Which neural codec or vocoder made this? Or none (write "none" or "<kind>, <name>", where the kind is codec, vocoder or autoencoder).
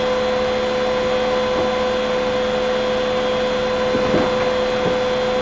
none